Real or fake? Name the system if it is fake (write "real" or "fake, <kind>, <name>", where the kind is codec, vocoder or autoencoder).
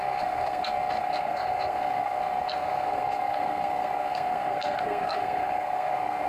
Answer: fake, codec, SNAC